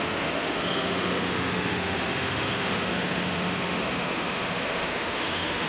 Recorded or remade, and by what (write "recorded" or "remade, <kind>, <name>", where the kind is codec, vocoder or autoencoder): remade, autoencoder, DAC-VAE